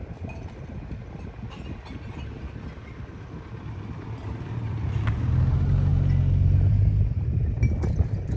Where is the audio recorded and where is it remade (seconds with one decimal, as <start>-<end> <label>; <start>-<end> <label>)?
0.0-8.4 recorded